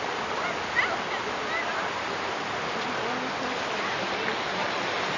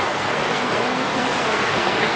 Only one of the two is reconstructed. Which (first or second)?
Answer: second